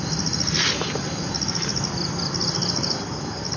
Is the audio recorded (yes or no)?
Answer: yes